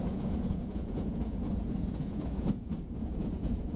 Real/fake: fake